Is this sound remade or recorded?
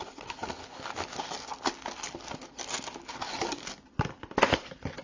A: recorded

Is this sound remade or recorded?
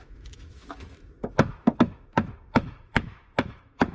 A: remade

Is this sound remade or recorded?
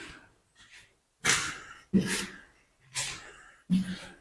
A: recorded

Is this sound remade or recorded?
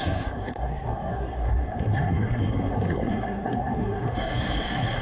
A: remade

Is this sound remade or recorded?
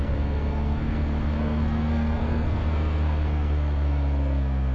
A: remade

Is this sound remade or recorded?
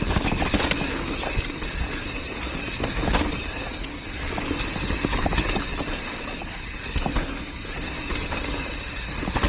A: recorded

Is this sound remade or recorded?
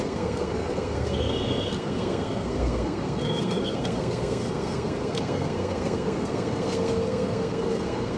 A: remade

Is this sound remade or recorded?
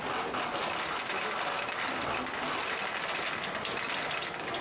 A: recorded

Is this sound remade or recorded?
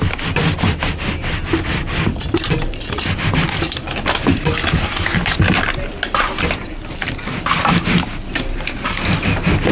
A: recorded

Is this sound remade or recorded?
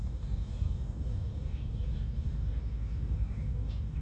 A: remade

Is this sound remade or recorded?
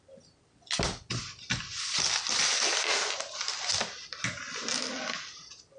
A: recorded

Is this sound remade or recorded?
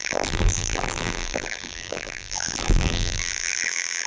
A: remade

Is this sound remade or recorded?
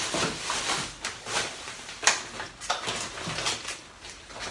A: recorded